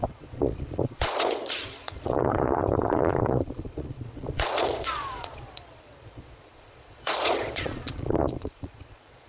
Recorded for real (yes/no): no